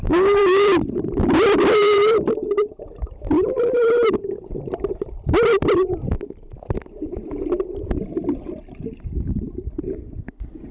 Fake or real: fake